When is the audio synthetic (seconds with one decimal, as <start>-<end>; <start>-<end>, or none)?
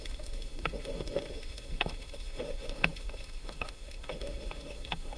0.0-5.2